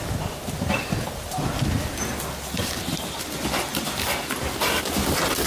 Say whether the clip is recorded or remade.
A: recorded